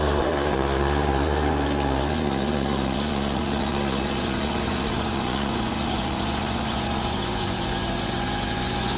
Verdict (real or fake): fake